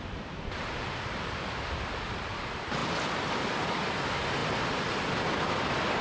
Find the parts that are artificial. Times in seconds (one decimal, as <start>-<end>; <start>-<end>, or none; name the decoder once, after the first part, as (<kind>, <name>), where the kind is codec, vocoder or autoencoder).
0.0-2.8 (vocoder, BigVGAN v2); 3.3-6.0